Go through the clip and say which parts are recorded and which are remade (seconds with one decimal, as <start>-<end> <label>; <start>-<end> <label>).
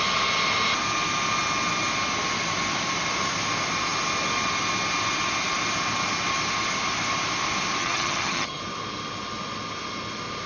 0.0-7.8 recorded; 7.8-8.6 remade; 8.6-10.5 recorded